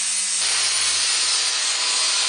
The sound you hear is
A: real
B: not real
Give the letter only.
A